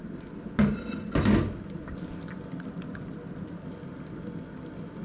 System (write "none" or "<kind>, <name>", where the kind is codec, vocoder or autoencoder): none